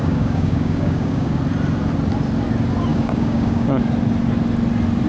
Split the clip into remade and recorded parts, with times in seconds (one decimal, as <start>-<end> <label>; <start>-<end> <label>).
0.0-1.4 remade; 1.4-2.9 recorded; 2.9-3.8 remade; 3.8-5.1 recorded